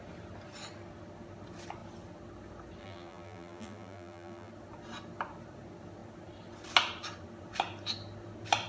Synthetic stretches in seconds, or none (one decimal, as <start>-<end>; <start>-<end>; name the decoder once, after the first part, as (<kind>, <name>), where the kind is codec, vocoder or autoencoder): 2.8-4.5 (vocoder, BigVGAN v2)